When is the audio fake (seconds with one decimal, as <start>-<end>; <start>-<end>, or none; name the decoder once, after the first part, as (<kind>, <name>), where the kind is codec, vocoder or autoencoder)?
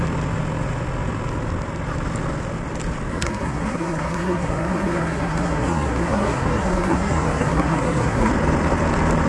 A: 3.1-8.3 (codec, SNAC)